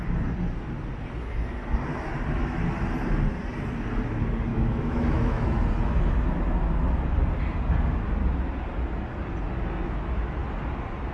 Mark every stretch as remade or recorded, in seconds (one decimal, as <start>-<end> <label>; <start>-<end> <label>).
0.0-4.5 recorded; 4.5-5.6 remade; 5.6-11.1 recorded